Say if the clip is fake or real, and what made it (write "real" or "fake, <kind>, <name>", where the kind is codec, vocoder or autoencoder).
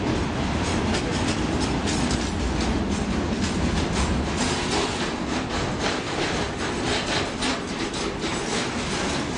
real